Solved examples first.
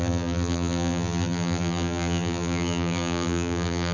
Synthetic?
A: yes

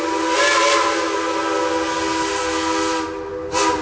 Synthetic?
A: no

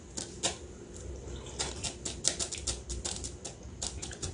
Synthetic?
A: no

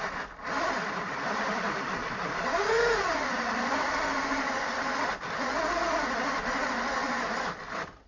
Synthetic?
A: no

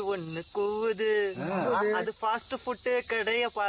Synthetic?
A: no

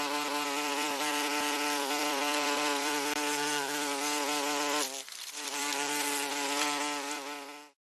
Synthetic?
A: yes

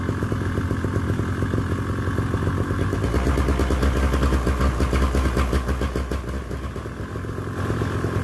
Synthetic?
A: no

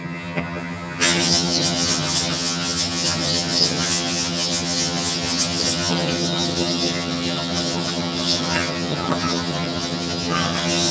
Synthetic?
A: yes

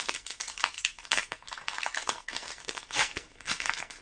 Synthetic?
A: yes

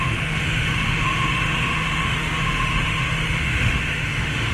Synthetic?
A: yes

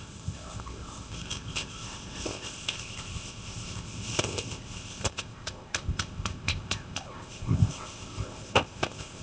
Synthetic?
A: yes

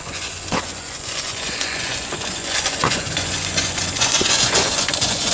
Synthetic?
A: yes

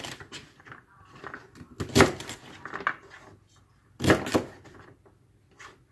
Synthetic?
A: no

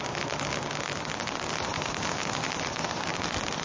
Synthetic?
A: no